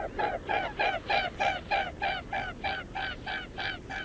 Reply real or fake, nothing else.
real